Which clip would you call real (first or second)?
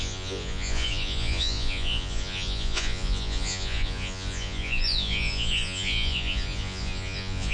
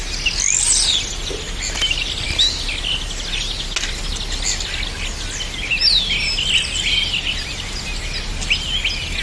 second